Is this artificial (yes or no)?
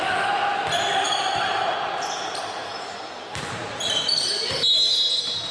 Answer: no